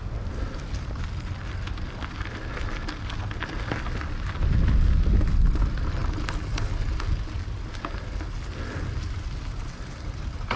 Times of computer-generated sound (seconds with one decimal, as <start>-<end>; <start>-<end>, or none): none